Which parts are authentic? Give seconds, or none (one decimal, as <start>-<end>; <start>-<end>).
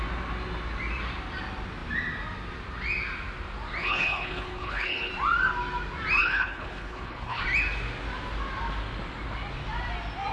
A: 0.0-3.8; 5.1-6.2; 7.4-10.3